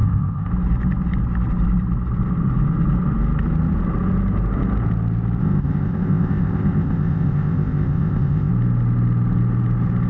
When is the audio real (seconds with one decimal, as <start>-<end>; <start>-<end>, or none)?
0.5-5.4; 8.5-10.1